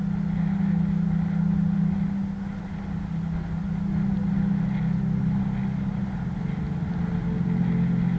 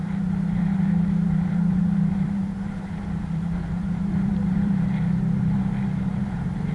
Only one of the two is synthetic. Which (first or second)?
second